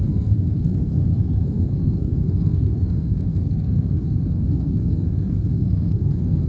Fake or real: fake